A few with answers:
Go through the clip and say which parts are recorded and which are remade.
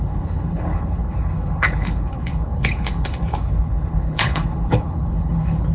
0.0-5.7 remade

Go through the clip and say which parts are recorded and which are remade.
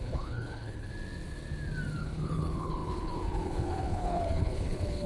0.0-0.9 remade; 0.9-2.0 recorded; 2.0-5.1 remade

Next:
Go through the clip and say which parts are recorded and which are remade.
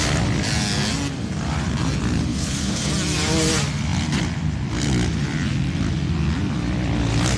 0.0-2.3 recorded; 2.3-2.9 remade; 2.9-7.4 recorded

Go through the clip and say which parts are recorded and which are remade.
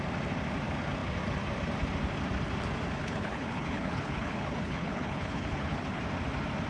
0.0-3.0 recorded; 3.0-6.0 remade; 6.0-6.7 recorded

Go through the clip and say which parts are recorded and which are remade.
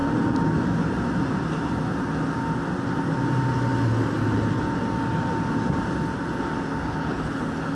0.0-6.8 recorded; 6.8-7.8 remade